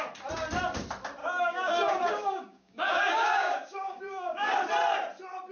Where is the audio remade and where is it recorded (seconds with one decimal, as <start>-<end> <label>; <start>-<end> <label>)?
0.0-1.2 recorded; 1.2-4.5 remade; 4.5-5.5 recorded